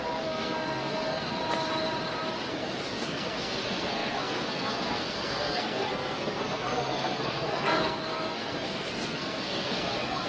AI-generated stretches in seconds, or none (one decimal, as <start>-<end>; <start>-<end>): 0.0-1.4; 2.5-10.3